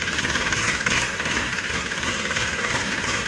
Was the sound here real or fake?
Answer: fake